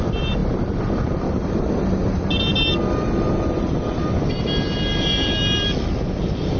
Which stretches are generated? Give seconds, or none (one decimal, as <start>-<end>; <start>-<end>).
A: 0.4-4.4; 4.9-5.8